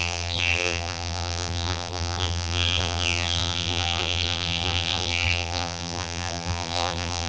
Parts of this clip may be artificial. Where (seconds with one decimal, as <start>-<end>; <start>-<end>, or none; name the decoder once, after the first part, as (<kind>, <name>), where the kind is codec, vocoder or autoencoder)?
0.0-7.3 (vocoder, BigVGAN v2)

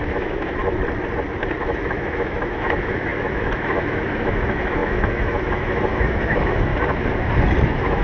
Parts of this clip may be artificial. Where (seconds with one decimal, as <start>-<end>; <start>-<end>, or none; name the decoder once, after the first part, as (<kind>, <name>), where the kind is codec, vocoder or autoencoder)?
0.0-0.6 (autoencoder, DAC-VAE); 1.6-6.7; 7.6-8.0

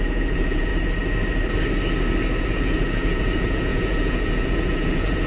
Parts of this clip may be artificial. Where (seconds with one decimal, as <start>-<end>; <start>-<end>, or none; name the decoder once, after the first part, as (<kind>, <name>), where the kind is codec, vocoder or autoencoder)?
0.0-0.7 (vocoder, Vocos); 2.4-5.3

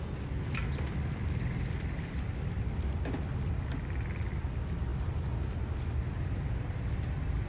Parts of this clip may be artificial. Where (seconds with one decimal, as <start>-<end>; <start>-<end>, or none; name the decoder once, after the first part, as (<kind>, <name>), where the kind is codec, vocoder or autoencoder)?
none

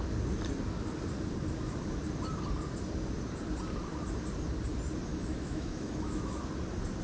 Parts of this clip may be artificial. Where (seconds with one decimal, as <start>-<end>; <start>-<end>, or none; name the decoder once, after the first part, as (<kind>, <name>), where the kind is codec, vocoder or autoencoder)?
5.1-6.4 (autoencoder, DAC-VAE)